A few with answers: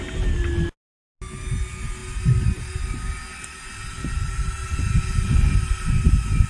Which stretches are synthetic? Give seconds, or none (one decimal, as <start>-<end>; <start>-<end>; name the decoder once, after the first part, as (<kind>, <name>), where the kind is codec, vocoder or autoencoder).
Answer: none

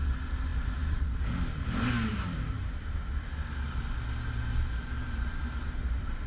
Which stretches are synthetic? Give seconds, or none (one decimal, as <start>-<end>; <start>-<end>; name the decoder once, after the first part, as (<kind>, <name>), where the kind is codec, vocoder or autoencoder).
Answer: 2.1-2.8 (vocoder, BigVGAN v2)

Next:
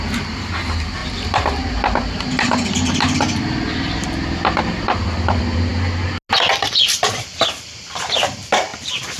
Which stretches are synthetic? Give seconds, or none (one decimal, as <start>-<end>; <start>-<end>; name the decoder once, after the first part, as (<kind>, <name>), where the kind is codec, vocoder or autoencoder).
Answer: 0.0-5.7 (vocoder, BigVGAN v2); 6.3-9.2

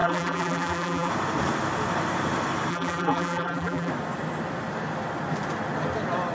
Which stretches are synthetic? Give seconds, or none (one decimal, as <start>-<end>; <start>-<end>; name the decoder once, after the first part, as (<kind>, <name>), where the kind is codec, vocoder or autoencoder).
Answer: 0.0-1.1 (vocoder, BigVGAN v2); 2.7-3.9

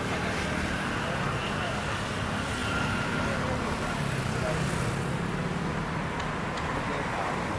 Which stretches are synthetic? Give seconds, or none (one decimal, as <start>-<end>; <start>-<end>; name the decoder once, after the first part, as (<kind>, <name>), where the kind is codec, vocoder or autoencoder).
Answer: none

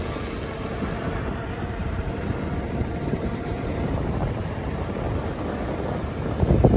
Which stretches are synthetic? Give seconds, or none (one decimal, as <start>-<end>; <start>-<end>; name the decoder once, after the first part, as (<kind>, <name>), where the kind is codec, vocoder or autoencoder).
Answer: 1.8-4.9 (vocoder, BigVGAN v2)

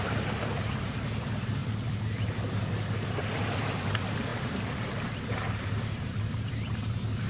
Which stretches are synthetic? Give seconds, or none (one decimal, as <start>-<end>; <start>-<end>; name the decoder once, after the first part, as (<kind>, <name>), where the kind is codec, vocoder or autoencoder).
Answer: 0.0-1.6 (vocoder, BigVGAN v2); 3.8-7.3